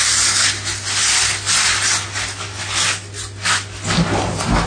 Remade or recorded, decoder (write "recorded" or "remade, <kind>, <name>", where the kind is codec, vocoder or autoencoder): recorded